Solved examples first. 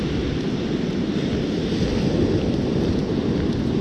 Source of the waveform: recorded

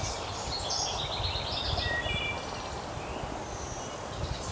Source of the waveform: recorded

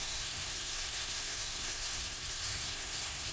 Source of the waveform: remade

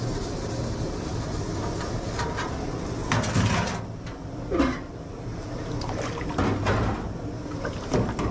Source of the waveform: recorded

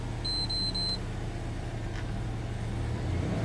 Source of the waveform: recorded